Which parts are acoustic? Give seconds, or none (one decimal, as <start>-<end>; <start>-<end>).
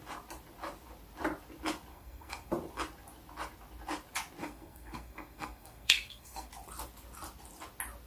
0.0-1.9; 2.5-4.4; 6.5-8.1